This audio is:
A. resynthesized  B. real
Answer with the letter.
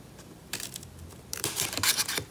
A